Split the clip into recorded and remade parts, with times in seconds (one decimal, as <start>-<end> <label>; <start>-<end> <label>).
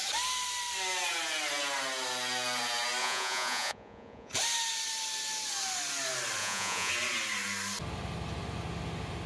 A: 0.0-3.0 recorded; 3.0-4.3 remade; 4.3-6.4 recorded; 6.4-6.9 remade; 6.9-9.3 recorded